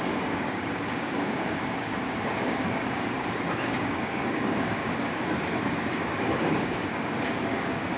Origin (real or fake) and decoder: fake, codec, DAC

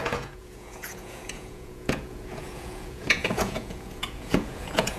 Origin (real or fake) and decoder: fake, vocoder, Vocos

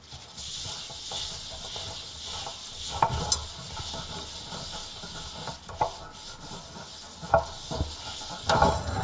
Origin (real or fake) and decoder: real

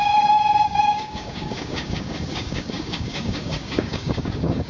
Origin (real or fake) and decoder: fake, codec, DAC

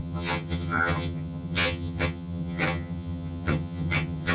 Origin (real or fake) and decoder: fake, vocoder, HiFi-GAN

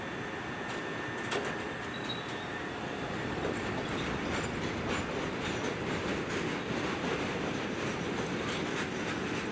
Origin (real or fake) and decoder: real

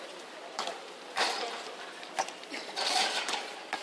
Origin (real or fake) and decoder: fake, vocoder, BigVGAN v2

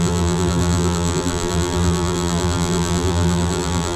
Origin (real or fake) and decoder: fake, vocoder, BigVGAN v2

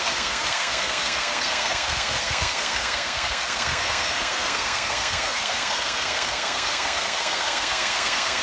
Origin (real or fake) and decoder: fake, codec, SNAC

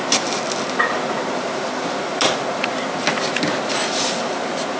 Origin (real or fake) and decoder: real